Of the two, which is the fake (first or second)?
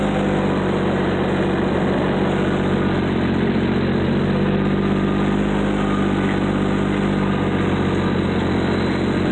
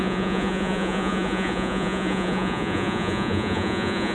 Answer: second